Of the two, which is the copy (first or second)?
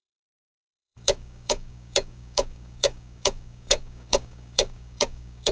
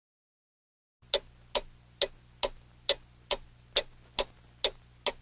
first